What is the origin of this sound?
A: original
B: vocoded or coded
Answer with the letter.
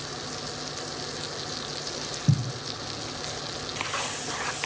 A